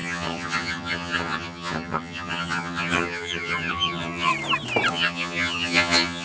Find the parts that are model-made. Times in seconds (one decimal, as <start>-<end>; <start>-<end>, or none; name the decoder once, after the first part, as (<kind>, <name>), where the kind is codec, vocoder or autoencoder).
0.0-4.3 (vocoder, HiFi-GAN); 4.9-6.2